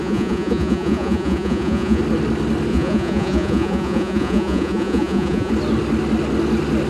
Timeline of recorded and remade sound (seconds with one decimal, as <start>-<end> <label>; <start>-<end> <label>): 0.0-2.0 remade; 2.0-2.7 recorded; 2.7-5.5 remade; 5.5-6.9 recorded